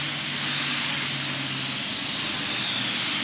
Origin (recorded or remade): recorded